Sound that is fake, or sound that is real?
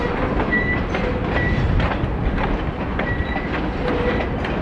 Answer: real